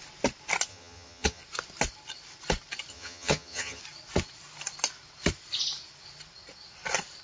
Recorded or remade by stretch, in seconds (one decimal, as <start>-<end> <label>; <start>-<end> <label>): 0.0-0.7 recorded; 0.7-1.4 remade; 1.4-2.9 recorded; 2.9-3.8 remade; 3.8-7.2 recorded